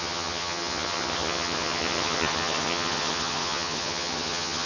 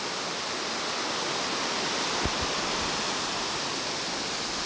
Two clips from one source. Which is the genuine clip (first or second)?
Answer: second